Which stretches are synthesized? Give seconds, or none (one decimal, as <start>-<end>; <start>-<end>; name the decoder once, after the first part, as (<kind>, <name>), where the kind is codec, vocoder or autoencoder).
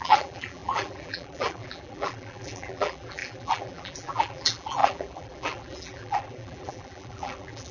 0.0-7.7 (vocoder, BigVGAN v2)